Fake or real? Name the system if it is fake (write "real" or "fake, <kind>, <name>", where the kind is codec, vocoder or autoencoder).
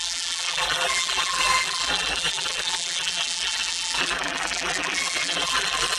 fake, vocoder, BigVGAN v2